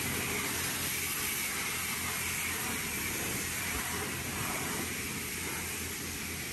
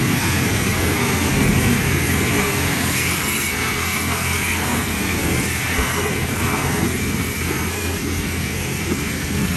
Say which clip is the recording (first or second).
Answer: first